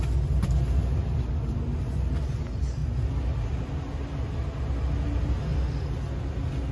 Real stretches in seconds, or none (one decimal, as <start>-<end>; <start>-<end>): 0.0-6.7

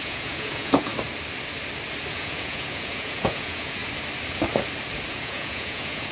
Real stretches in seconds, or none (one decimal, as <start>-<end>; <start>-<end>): 0.9-2.1; 3.8-5.1

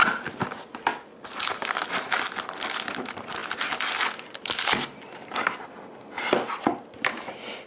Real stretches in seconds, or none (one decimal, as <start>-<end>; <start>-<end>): 0.0-7.7

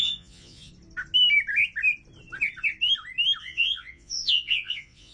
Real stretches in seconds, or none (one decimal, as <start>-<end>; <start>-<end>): 0.7-3.4

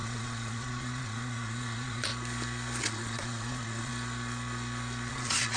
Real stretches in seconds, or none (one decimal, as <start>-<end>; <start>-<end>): 2.1-2.8; 3.9-5.1